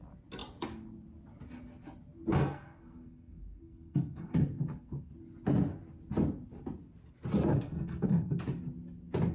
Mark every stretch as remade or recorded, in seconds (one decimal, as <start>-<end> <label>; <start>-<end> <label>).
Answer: 0.0-2.4 recorded; 2.4-5.1 remade; 5.1-7.5 recorded; 7.5-8.4 remade; 8.4-9.3 recorded